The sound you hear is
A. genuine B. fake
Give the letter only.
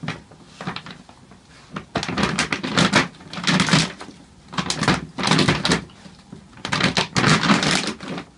A